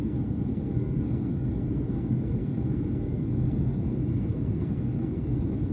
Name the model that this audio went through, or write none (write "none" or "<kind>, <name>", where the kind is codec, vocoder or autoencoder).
codec, SNAC